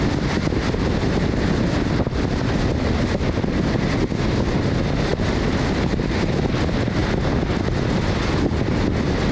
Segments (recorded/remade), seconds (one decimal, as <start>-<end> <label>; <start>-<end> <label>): 0.0-9.3 recorded